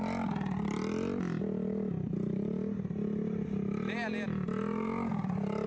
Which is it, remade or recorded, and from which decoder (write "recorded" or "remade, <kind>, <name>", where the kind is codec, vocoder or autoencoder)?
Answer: recorded